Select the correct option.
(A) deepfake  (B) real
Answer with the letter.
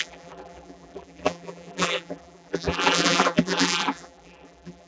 A